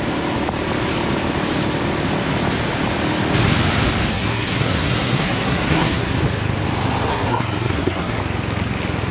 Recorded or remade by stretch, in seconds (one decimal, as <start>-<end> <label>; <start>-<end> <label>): 0.0-4.1 recorded; 4.1-6.1 remade; 6.1-7.1 recorded; 7.1-8.2 remade; 8.2-9.1 recorded